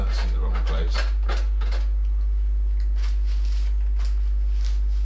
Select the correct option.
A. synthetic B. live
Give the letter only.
B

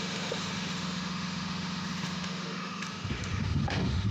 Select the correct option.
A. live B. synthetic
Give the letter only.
B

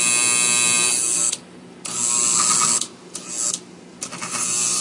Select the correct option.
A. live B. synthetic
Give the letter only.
A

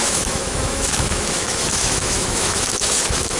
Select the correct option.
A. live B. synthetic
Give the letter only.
B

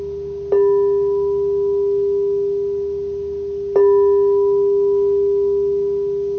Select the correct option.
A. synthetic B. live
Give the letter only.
B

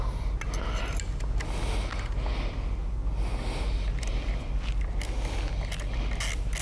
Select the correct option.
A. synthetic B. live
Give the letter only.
B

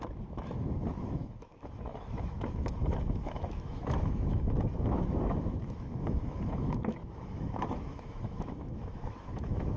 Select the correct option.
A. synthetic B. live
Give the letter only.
A